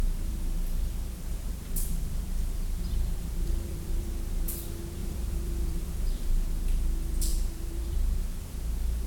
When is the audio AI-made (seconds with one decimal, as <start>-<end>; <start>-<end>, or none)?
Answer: 1.3-4.1; 5.0-6.3; 7.3-8.2